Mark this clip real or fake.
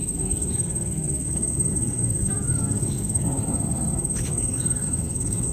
fake